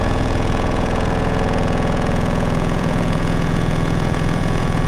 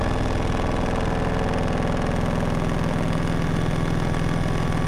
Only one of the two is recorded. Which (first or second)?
second